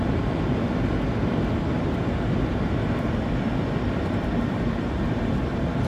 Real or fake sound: fake